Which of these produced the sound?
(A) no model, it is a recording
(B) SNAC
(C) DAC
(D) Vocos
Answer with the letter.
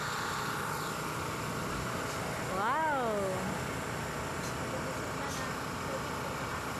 A